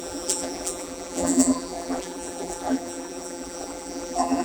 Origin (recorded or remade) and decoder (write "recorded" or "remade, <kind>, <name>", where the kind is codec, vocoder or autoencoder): remade, vocoder, BigVGAN v2